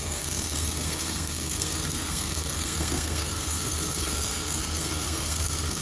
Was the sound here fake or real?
fake